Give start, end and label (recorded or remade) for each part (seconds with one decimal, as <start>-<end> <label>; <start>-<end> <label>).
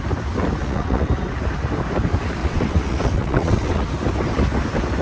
0.0-0.6 recorded; 0.6-1.1 remade; 1.1-2.4 recorded; 2.4-3.9 remade; 3.9-5.0 recorded